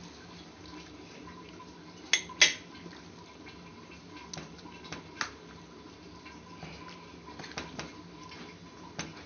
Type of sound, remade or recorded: recorded